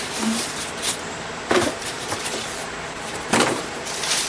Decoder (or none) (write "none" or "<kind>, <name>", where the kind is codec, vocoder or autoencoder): vocoder, BigVGAN v2